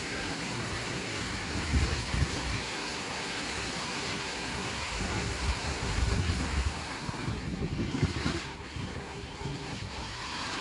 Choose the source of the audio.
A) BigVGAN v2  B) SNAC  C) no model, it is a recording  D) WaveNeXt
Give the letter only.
B